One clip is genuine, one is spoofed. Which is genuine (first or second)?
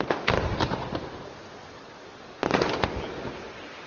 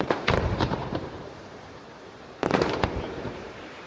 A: first